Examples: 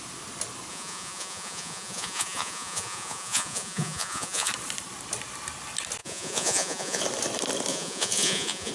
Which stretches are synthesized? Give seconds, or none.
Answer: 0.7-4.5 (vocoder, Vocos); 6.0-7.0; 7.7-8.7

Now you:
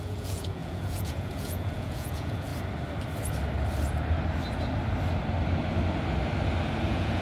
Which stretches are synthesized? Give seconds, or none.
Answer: 0.0-2.5 (vocoder, Vocos); 6.8-7.2

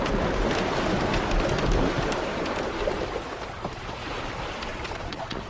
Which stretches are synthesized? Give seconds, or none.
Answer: 4.7-5.5 (vocoder, Vocos)

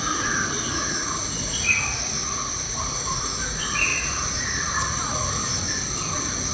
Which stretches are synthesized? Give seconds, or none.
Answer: 0.0-5.4 (vocoder, Vocos)

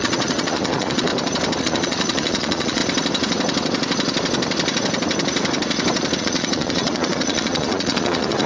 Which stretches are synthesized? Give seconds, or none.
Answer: 0.0-1.1 (vocoder, Vocos); 1.6-2.8; 6.2-8.5

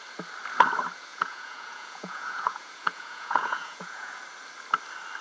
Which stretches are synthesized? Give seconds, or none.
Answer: 1.1-4.2 (vocoder, Vocos)

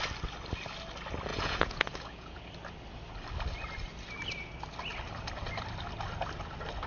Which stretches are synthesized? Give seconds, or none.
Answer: 1.3-2.4 (vocoder, Vocos)